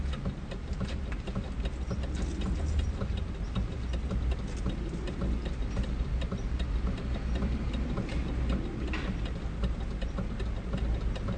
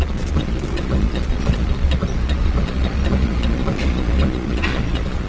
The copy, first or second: second